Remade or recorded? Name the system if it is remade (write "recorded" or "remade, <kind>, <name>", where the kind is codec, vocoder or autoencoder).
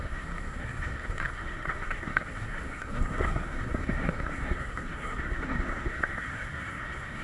remade, codec, SNAC